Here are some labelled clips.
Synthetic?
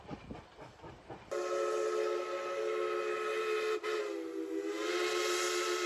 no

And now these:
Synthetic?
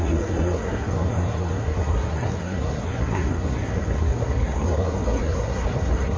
yes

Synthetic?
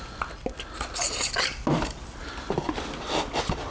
no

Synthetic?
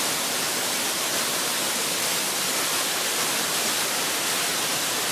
no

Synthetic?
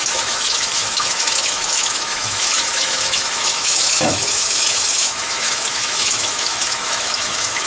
yes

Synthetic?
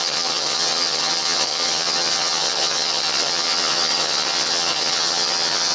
yes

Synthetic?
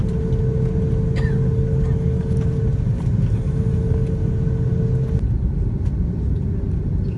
no